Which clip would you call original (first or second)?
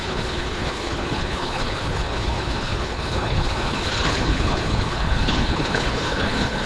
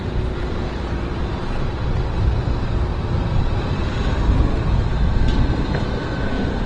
second